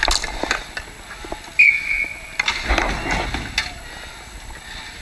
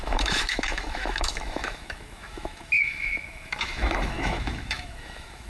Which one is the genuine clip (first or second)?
first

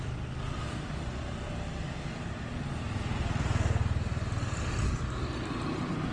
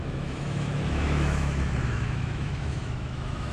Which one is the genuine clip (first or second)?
first